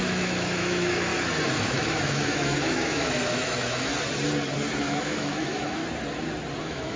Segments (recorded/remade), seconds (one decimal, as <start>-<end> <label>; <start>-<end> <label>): 0.0-1.1 remade; 1.1-1.6 recorded; 1.6-3.9 remade; 3.9-4.8 recorded; 4.8-5.8 remade; 5.8-6.6 recorded; 6.6-7.0 remade